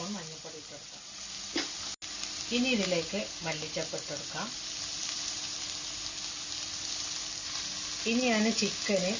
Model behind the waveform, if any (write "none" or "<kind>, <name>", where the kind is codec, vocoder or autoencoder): none